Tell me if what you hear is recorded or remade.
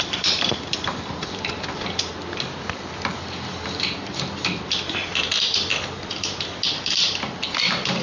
remade